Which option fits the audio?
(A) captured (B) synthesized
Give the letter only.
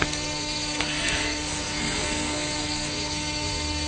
B